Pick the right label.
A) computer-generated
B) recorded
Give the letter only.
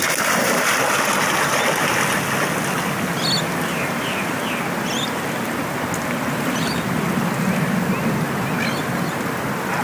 B